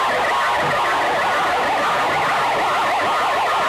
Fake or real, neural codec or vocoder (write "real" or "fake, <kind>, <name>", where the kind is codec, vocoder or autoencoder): real